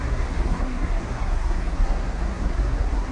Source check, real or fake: fake